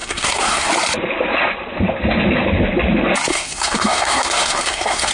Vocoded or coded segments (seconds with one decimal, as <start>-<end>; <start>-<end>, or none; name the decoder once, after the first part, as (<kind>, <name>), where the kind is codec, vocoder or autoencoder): 0.0-0.7 (codec, SNAC); 3.3-5.1